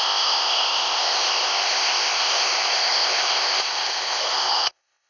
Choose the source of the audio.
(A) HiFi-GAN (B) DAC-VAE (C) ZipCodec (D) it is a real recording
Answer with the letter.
C